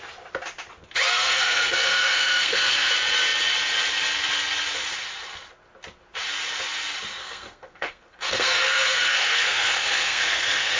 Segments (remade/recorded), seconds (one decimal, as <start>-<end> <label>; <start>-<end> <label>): 0.0-1.1 recorded; 1.1-2.9 remade; 2.9-7.2 recorded; 7.2-10.8 remade